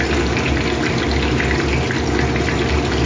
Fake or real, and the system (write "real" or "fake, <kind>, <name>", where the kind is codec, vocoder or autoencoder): real